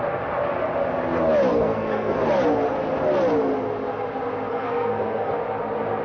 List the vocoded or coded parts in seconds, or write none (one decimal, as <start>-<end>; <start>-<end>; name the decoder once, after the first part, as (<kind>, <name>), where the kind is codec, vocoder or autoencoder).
1.5-2.2 (codec, SNAC); 4.5-5.3

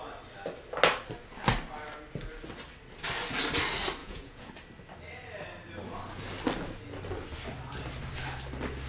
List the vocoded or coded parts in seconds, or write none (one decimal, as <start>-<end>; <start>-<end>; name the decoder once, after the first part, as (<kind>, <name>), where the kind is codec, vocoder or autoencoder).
4.0-4.5 (vocoder, Vocos)

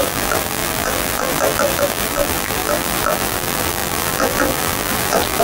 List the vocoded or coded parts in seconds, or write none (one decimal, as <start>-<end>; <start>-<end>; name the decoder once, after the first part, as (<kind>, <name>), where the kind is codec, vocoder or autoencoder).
0.0-5.4 (vocoder, BigVGAN v2)

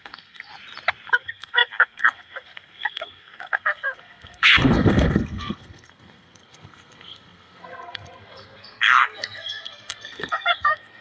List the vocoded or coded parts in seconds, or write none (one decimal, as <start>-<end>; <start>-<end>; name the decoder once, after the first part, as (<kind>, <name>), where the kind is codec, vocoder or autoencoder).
0.0-0.5 (codec, SNAC); 1.1-11.0

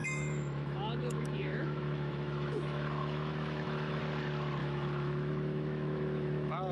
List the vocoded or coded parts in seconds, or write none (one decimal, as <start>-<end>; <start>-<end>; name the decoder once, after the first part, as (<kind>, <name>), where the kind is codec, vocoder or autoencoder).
0.0-4.0 (autoencoder, DAC-VAE); 4.6-6.7

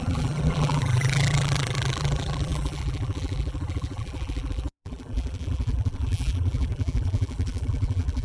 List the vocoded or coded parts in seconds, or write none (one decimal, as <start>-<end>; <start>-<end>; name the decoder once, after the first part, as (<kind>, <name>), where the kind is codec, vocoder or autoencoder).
0.0-8.2 (vocoder, BigVGAN v2)

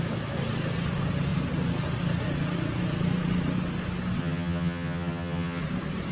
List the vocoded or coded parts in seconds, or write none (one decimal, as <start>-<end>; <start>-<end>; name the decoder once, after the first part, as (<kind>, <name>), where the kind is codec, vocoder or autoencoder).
4.2-5.6 (vocoder, HiFi-GAN)